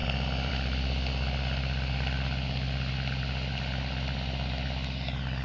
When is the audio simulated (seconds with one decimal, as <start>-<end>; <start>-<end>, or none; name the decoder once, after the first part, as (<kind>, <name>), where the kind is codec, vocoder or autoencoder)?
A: none